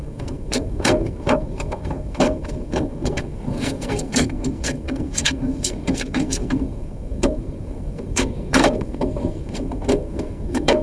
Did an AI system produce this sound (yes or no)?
yes